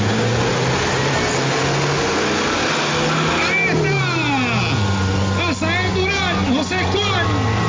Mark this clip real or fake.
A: real